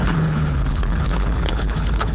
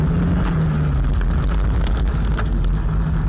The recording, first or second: second